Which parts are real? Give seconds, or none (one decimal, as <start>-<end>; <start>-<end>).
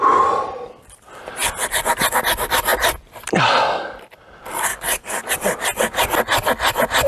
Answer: 0.0-4.7; 5.3-7.1